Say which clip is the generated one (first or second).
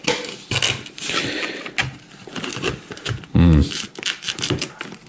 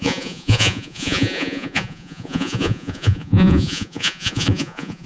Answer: second